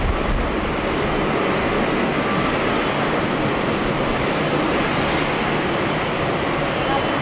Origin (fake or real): real